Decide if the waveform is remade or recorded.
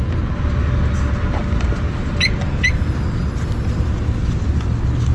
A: recorded